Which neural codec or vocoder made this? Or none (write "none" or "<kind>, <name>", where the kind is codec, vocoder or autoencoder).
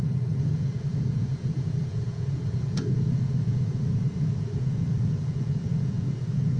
vocoder, Vocos